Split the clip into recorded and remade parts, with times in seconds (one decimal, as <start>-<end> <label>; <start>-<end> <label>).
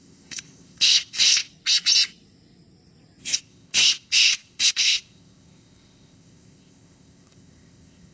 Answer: 0.0-1.5 remade; 1.5-3.2 recorded; 3.2-8.1 remade